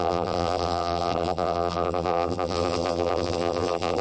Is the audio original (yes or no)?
no